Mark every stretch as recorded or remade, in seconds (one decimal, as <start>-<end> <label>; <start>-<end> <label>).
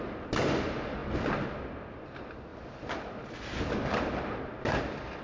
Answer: 0.0-5.2 recorded